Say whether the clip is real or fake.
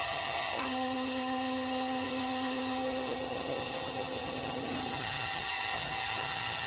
fake